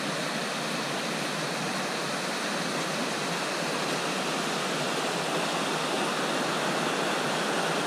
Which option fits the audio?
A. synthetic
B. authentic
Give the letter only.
B